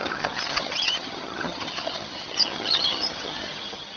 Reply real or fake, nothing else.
fake